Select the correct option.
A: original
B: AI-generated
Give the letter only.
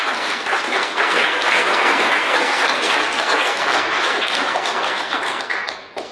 B